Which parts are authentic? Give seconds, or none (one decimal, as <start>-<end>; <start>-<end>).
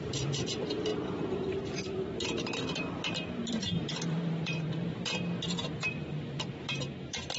none